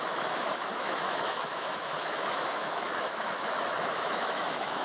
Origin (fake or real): fake